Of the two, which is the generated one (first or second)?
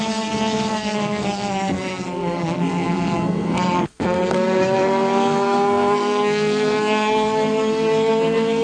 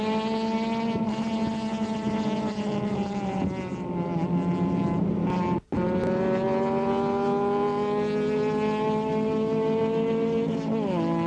first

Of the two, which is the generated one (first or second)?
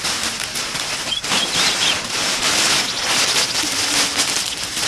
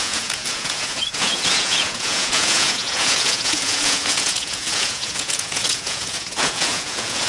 second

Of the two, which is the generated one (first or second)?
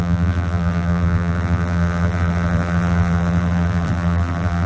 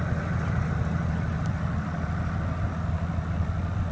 first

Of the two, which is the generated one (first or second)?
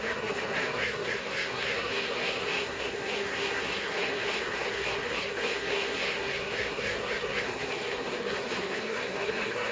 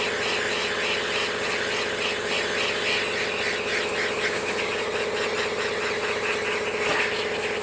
first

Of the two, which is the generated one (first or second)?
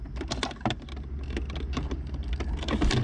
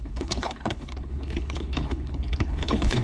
second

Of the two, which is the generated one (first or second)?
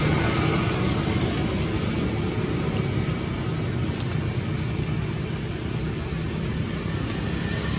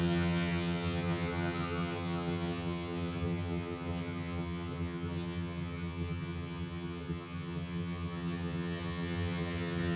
second